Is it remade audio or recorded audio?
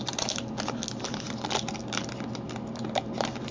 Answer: recorded